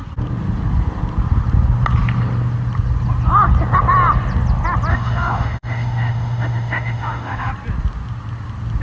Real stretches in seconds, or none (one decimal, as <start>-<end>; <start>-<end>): 0.0-4.9; 7.5-8.8